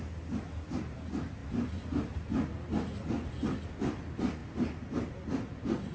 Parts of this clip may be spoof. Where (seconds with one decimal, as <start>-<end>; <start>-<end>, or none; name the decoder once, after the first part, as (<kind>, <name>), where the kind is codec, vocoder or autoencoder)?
none